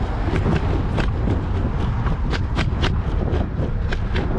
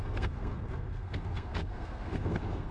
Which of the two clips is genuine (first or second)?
first